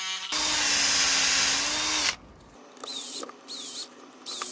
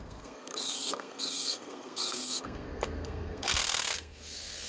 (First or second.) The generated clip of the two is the second